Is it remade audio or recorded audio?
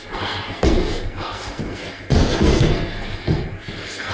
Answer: remade